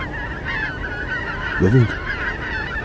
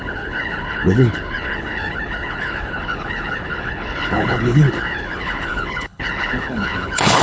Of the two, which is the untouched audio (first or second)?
first